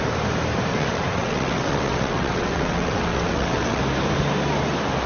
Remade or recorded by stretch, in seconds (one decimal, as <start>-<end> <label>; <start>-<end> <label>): 0.0-0.7 recorded; 0.7-3.8 remade; 3.8-5.1 recorded